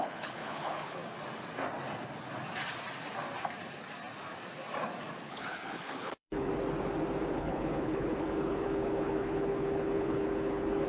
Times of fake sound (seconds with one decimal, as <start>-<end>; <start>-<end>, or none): 0.0-1.0; 5.2-6.5; 7.3-10.9